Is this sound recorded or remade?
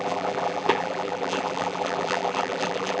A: remade